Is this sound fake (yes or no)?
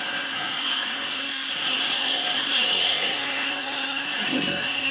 yes